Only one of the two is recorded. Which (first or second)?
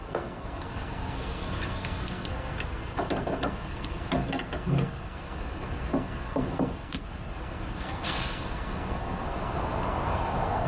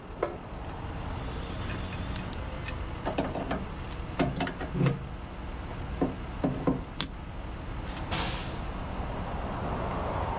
second